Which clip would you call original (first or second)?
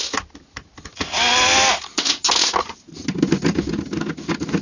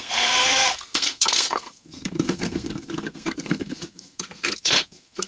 first